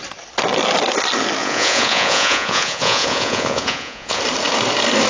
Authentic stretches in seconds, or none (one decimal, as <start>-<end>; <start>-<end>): 0.0-1.4; 4.2-5.1